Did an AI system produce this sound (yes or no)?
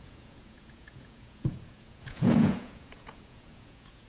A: yes